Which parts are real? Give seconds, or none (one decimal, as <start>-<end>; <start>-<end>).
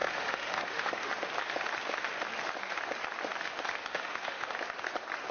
1.1-3.9; 4.5-5.3